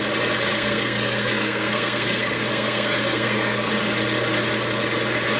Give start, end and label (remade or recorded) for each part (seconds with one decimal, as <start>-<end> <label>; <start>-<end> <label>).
0.0-0.5 recorded; 0.5-3.7 remade; 3.7-5.4 recorded